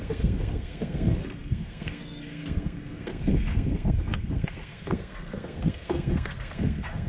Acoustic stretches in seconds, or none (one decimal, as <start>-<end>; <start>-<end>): none